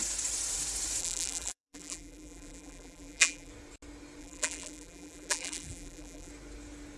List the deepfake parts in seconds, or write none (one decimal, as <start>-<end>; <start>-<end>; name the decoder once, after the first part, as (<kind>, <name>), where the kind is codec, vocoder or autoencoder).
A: 1.0-3.5 (vocoder, BigVGAN v2); 4.2-6.3